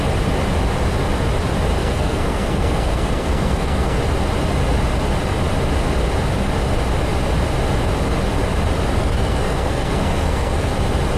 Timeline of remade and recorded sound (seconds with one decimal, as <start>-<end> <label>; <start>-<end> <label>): 0.0-1.8 recorded; 1.8-4.0 remade; 4.0-9.0 recorded; 9.0-10.7 remade; 10.7-11.2 recorded